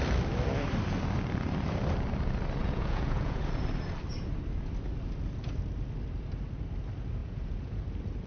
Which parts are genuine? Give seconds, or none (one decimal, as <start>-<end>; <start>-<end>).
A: 0.0-2.6; 3.4-7.2; 7.8-8.3